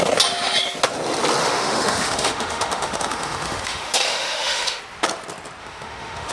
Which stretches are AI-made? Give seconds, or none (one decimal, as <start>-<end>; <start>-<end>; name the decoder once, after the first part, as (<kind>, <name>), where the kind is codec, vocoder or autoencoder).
1.4-4.8 (autoencoder, DAC-VAE); 5.6-6.3